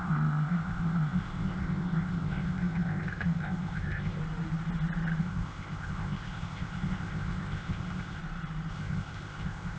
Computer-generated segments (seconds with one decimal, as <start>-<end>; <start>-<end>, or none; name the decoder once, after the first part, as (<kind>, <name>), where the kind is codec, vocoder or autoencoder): 0.0-4.2 (codec, ZipCodec); 5.2-8.2; 8.7-9.8